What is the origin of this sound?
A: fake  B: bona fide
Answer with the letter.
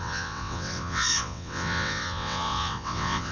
A